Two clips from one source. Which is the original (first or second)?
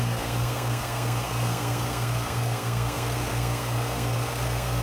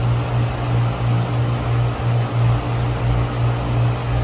second